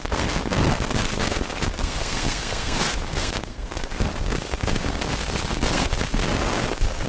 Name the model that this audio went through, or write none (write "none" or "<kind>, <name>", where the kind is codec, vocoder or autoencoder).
codec, SNAC